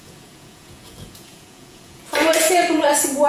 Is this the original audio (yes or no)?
no